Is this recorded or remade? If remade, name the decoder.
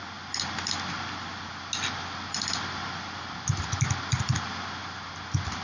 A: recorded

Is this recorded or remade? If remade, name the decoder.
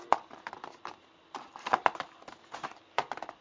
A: recorded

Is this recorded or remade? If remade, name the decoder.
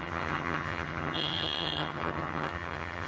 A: remade, vocoder, HiFi-GAN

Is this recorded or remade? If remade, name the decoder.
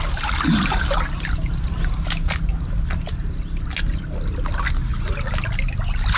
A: recorded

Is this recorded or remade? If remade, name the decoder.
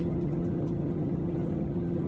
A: remade, vocoder, HiFi-GAN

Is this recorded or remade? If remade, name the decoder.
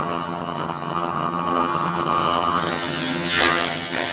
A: remade, vocoder, HiFi-GAN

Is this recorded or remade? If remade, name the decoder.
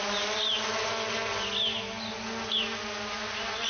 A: recorded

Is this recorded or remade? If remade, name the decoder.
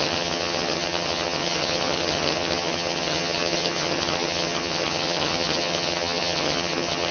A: remade, vocoder, HiFi-GAN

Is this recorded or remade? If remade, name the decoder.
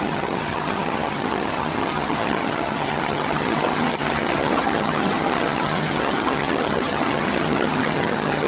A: remade, vocoder, HiFi-GAN